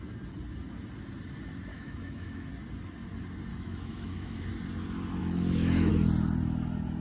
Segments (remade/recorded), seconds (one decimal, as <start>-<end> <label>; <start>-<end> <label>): 0.0-1.7 recorded; 1.7-2.5 remade; 2.5-3.5 recorded; 3.5-4.5 remade; 4.5-5.2 recorded; 5.2-5.9 remade; 5.9-7.0 recorded